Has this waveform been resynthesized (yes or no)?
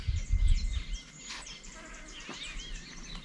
no